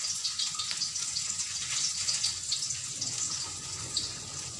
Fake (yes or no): yes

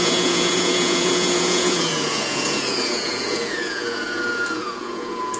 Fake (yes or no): yes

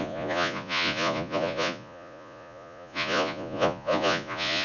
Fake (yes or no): yes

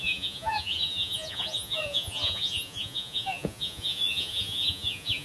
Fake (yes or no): yes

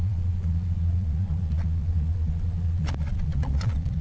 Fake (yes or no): yes